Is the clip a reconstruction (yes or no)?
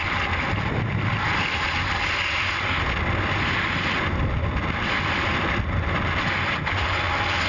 no